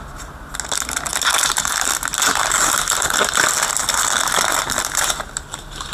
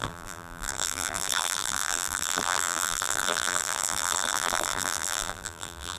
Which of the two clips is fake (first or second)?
second